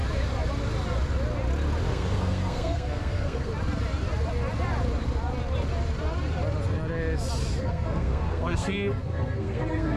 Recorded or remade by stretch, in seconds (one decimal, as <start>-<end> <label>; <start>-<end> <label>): 0.0-1.9 recorded; 1.9-3.5 remade; 3.5-7.6 recorded; 7.6-10.0 remade